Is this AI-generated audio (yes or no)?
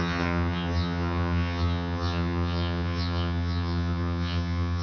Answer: yes